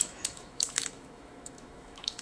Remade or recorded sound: remade